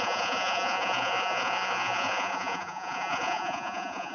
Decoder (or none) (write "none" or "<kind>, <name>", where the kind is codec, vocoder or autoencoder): vocoder, Vocos